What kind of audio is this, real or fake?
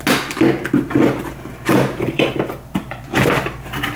real